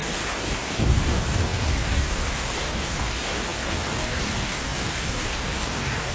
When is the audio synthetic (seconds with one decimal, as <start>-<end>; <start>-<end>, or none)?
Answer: 0.0-6.1